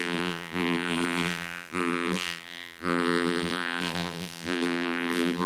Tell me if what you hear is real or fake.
fake